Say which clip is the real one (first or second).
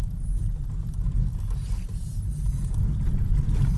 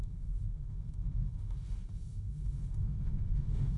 first